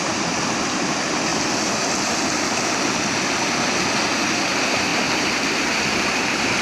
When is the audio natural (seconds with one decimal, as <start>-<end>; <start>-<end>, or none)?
0.0-6.6